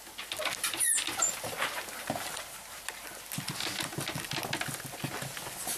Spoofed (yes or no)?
no